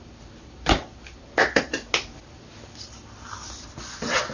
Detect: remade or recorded recorded